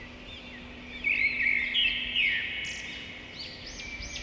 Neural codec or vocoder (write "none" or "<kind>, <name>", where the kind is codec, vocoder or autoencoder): none